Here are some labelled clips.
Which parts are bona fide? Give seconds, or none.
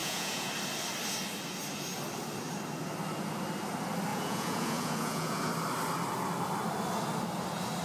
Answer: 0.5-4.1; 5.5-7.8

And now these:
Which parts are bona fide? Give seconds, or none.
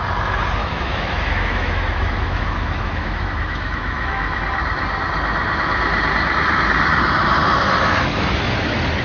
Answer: 0.0-0.6; 4.4-9.0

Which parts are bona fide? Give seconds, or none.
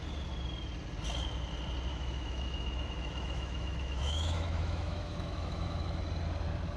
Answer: 0.0-1.9; 6.0-6.8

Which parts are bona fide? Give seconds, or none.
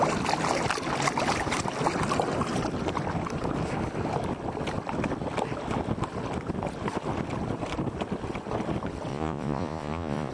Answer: 0.0-9.1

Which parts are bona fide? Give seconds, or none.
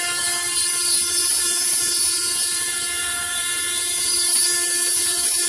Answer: 0.0-1.2; 4.1-4.9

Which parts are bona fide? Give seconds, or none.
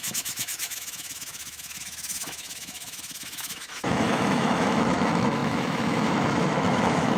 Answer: none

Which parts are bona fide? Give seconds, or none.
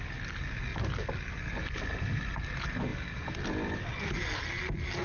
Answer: 0.0-5.0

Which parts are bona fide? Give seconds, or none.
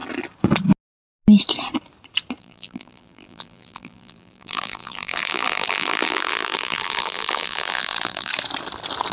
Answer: 0.0-2.4; 8.3-9.1